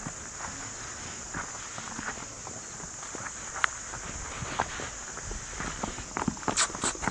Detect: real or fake real